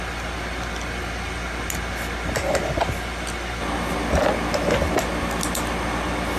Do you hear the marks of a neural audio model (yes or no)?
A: no